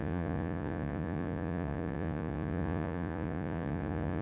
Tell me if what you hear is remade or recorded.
remade